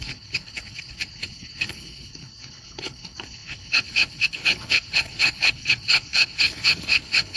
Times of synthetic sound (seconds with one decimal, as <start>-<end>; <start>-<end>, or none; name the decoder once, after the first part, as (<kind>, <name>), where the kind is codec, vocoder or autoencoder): 0.0-7.4 (codec, HILCodec)